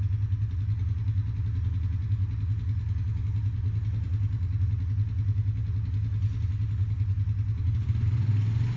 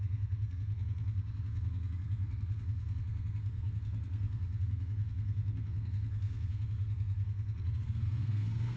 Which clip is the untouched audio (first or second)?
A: first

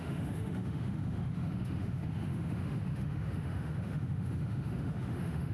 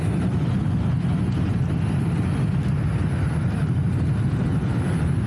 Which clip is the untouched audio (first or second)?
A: second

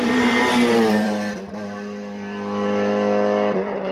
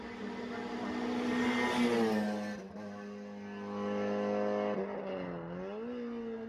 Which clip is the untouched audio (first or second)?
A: second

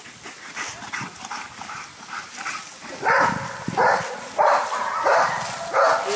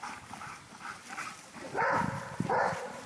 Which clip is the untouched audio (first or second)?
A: first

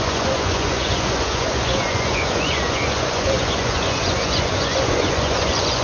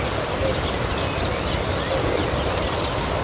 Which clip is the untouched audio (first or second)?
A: second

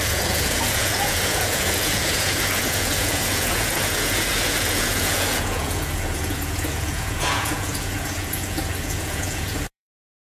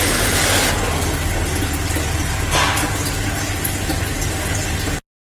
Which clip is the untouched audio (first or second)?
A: second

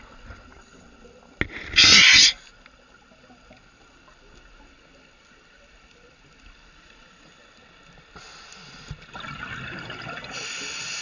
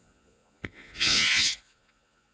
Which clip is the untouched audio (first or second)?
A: first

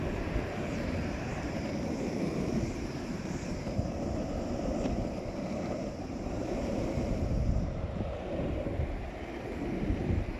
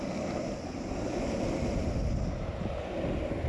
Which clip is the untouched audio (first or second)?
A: second